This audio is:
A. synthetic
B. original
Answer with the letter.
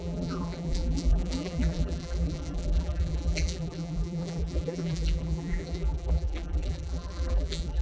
A